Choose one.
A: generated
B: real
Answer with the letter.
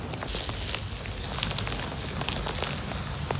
B